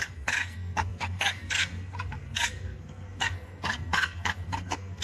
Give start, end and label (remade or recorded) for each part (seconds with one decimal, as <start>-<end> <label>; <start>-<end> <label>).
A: 0.0-5.0 remade